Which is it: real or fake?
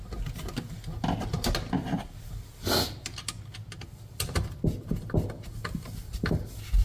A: real